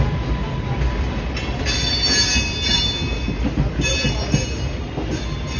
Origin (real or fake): real